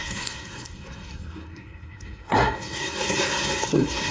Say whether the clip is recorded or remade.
remade